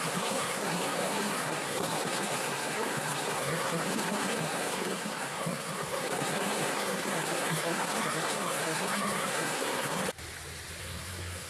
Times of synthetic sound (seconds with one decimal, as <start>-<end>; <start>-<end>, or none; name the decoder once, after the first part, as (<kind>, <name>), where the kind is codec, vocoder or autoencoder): 0.0-10.0 (codec, SNAC); 10.8-11.5